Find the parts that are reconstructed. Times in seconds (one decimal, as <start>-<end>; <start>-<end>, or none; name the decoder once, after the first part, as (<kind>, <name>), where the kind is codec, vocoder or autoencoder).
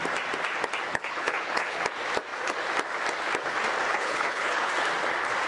0.9-1.8 (codec, HILCodec); 3.9-4.7